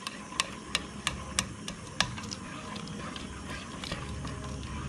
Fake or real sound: real